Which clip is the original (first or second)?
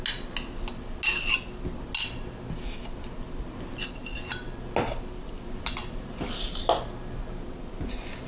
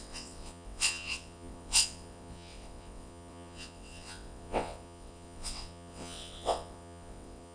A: first